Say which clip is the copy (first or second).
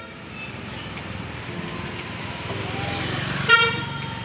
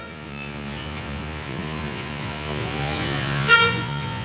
second